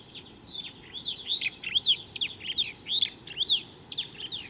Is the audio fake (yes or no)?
no